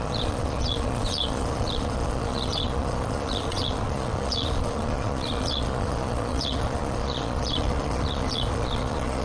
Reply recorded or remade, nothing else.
remade